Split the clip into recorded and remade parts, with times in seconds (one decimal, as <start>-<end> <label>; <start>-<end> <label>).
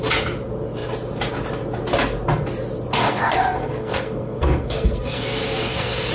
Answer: 0.0-3.0 recorded; 3.0-6.1 remade